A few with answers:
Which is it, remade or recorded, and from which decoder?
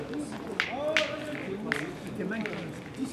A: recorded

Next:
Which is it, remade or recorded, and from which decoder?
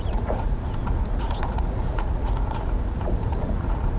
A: remade, vocoder, Vocos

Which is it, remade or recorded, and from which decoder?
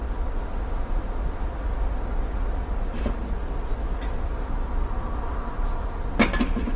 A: recorded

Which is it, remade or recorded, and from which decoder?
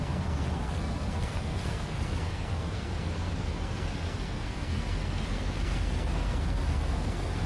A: remade, codec, SNAC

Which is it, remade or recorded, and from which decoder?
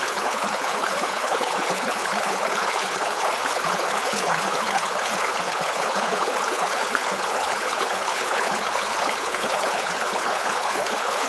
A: remade, codec, HILCodec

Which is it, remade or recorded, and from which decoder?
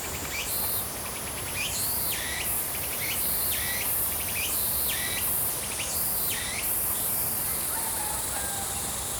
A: recorded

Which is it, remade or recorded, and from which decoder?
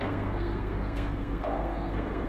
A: remade, codec, SNAC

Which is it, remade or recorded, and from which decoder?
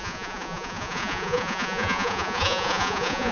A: remade, vocoder, Vocos